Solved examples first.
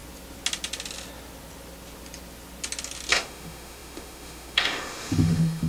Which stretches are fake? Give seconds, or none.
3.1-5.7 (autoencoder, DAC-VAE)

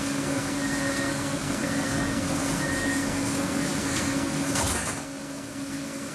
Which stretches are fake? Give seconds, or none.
0.0-6.1 (codec, SNAC)

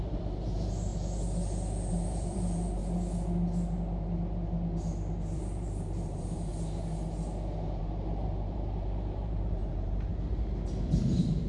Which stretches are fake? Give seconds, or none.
0.0-0.9 (vocoder, BigVGAN v2); 1.9-2.8; 5.3-6.5; 7.8-10.1

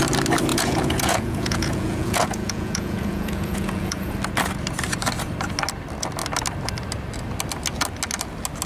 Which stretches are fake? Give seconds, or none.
0.5-4.1 (vocoder, Vocos)